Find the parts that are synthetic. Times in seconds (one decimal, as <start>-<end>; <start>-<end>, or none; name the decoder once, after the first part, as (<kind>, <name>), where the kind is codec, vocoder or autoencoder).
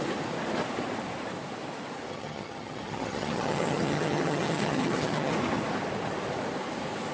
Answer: 2.1-5.3 (vocoder, HiFi-GAN)